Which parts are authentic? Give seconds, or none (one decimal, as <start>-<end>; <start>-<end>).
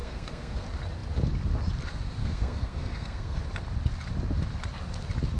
0.6-2.2; 3.4-5.4